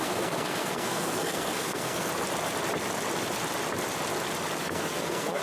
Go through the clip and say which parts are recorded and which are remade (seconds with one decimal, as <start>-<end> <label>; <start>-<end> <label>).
0.0-2.1 remade; 2.1-4.6 recorded; 4.6-5.4 remade